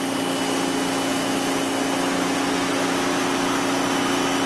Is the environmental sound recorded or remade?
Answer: recorded